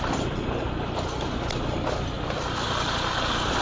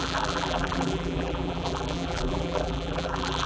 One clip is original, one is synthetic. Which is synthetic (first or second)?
second